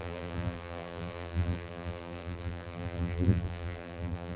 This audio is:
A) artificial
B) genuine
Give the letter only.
A